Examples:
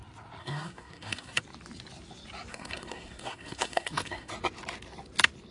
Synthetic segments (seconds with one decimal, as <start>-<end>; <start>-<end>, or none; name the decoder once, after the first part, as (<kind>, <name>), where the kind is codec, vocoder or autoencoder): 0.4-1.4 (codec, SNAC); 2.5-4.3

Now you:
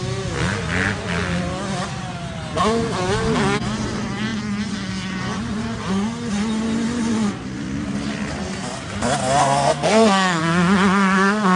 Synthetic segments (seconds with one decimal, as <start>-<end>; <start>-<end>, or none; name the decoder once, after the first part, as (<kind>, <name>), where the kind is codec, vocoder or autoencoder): 9.4-10.4 (codec, SNAC)

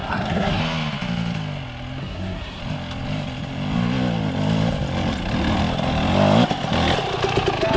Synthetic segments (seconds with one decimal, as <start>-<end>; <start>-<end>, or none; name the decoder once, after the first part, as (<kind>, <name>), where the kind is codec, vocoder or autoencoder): 0.0-0.6 (codec, SNAC); 2.0-2.6

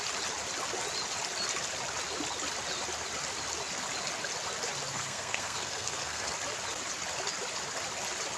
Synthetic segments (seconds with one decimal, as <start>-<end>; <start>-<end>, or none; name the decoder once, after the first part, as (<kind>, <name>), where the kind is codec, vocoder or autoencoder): 4.9-6.3 (codec, SNAC)

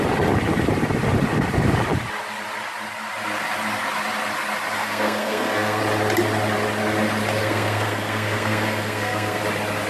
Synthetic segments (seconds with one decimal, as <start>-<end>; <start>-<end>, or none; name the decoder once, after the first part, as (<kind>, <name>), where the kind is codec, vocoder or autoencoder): 4.8-5.8 (codec, SNAC); 7.4-9.4

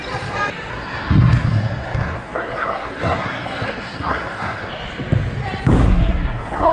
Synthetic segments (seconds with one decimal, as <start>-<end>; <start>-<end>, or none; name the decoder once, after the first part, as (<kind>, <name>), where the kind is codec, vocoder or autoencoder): 0.7-4.7 (codec, SNAC); 5.8-6.7

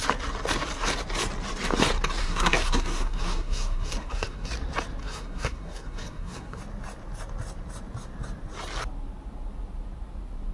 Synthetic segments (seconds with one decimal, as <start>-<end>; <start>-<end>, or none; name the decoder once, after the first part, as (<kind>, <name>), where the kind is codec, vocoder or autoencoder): 2.2-4.5 (codec, SNAC); 5.0-6.6

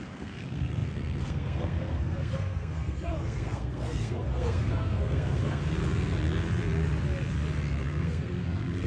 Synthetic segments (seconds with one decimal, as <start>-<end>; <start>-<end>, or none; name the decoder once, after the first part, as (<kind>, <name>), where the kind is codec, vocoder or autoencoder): 0.0-5.6 (codec, SNAC); 7.8-8.9